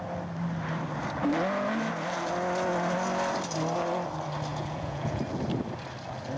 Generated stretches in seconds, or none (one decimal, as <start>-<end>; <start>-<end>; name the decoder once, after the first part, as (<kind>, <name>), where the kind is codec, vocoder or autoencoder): 4.5-5.2 (vocoder, Vocos)